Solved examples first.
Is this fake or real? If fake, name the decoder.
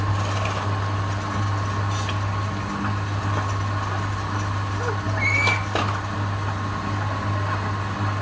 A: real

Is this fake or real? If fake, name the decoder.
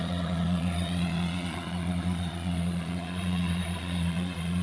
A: fake, vocoder, Vocos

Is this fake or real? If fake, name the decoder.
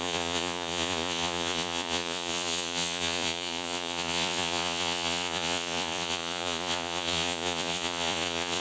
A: fake, vocoder, Vocos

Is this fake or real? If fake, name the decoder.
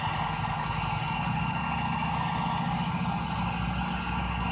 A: real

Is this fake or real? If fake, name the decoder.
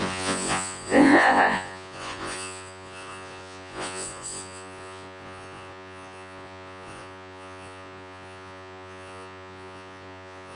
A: fake, vocoder, Vocos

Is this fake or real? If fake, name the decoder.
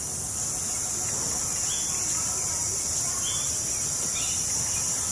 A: real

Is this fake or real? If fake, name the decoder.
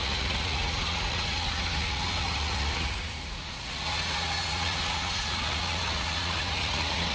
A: fake, vocoder, Vocos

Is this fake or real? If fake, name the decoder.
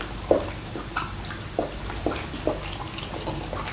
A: real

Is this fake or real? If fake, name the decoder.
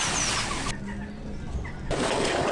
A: real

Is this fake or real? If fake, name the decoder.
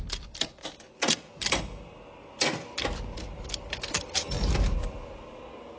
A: real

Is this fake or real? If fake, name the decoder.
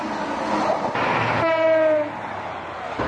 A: real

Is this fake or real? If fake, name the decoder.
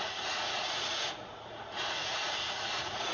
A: fake, vocoder, Vocos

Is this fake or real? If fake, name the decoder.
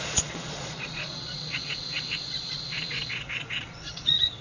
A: fake, vocoder, Vocos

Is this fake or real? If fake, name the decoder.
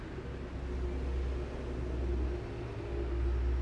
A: real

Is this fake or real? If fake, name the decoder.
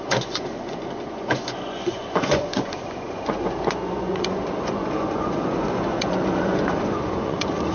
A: fake, vocoder, Vocos